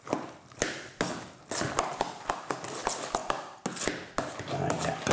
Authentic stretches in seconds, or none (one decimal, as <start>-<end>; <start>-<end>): 0.0-5.1